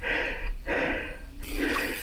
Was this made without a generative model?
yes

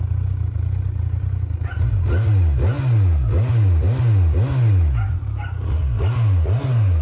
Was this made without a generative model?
yes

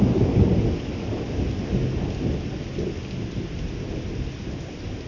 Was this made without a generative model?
yes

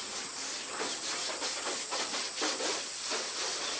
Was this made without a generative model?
yes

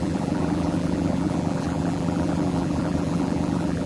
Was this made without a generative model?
no